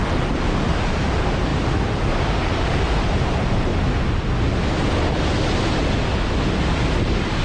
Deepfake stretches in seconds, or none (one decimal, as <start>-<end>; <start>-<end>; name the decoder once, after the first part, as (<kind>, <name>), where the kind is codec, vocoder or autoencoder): 0.0-3.7 (vocoder, BigVGAN v2); 7.0-7.4